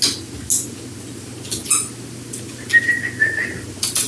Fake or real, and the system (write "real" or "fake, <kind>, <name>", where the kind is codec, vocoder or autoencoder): real